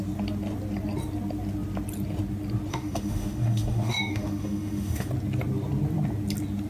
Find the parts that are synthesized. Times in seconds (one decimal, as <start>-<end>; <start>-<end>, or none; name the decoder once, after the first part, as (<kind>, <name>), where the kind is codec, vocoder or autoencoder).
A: 2.7-5.1 (autoencoder, DAC-VAE)